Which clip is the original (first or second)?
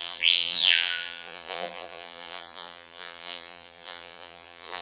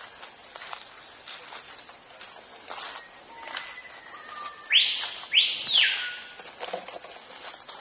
second